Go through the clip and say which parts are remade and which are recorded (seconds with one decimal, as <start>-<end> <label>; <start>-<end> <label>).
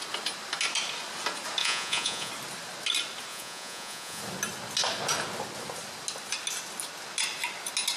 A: 0.0-1.6 recorded; 1.6-2.3 remade; 2.3-3.3 recorded; 3.3-4.2 remade; 4.2-8.0 recorded